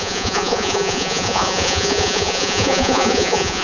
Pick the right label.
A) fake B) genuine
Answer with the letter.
A